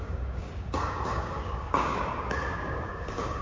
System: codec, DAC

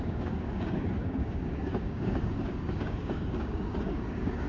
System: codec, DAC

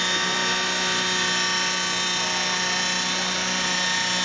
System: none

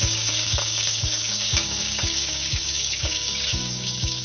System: codec, DAC